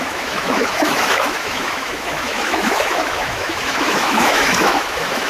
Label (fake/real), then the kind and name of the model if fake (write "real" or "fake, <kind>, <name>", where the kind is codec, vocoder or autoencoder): fake, autoencoder, DAC-VAE